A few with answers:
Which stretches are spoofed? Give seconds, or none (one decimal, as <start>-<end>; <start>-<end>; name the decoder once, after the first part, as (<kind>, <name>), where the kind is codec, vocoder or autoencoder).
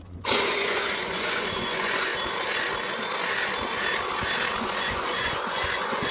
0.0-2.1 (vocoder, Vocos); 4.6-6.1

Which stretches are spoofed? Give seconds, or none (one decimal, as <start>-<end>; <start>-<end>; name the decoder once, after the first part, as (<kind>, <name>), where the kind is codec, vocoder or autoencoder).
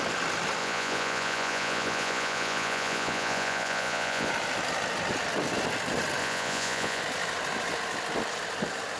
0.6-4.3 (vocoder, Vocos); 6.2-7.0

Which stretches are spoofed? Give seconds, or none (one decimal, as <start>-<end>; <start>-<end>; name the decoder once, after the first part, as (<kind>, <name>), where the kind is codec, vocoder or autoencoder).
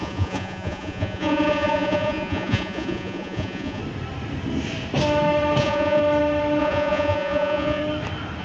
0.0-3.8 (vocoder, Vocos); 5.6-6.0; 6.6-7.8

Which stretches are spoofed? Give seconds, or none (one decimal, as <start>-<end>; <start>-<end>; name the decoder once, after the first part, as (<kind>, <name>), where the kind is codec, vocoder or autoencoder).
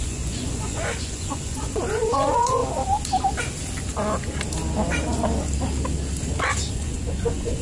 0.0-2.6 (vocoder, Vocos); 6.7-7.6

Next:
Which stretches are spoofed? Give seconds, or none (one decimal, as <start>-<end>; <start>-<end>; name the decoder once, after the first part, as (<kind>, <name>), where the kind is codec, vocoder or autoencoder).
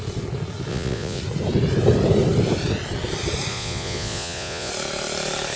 0.7-1.2 (vocoder, Vocos); 3.5-4.7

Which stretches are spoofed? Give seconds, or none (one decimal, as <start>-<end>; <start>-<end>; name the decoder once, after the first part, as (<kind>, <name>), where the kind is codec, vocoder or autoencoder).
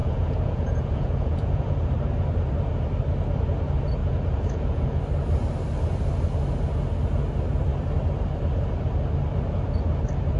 0.0-1.9 (vocoder, Vocos); 4.0-5.0